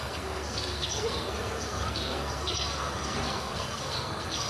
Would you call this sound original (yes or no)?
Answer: no